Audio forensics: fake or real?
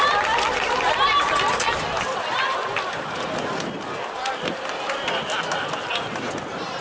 real